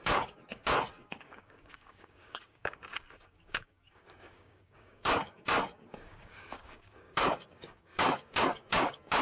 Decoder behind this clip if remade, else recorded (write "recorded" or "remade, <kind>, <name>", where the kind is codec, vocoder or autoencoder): remade, codec, DAC